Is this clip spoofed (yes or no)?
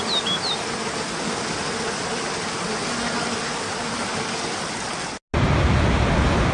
no